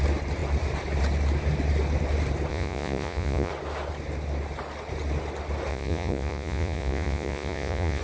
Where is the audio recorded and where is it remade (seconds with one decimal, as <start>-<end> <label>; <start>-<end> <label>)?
0.0-2.5 recorded; 2.5-3.5 remade; 3.5-5.7 recorded; 5.7-8.0 remade